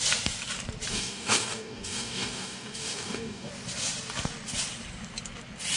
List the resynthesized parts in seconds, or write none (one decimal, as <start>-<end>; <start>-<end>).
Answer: 0.9-3.5